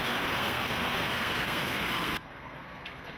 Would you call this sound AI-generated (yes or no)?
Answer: yes